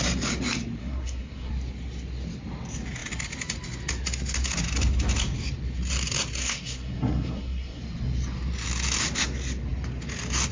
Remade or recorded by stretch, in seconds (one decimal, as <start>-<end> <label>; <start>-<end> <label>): 0.0-0.8 recorded; 0.8-1.5 remade; 1.5-6.4 recorded; 6.4-7.8 remade; 7.8-10.5 recorded